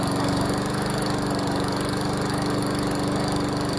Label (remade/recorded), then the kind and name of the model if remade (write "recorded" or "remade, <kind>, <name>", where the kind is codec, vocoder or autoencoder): remade, codec, DAC